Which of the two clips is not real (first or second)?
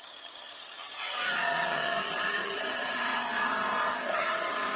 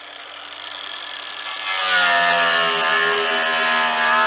first